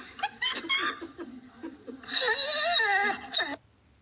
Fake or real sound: real